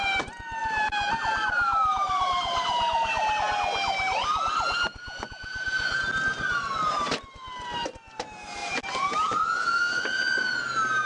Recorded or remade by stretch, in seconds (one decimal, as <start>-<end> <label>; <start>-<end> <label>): 0.0-0.6 recorded; 0.6-3.4 remade; 3.4-8.6 recorded; 8.6-10.0 remade; 10.0-11.1 recorded